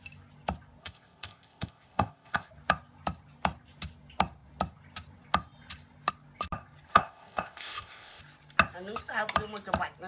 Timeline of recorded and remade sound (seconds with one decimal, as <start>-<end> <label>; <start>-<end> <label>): 0.0-0.8 recorded; 0.8-2.5 remade; 2.5-6.9 recorded; 6.9-8.2 remade; 8.2-10.1 recorded